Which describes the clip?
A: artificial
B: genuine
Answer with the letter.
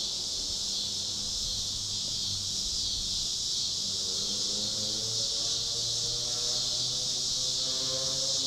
B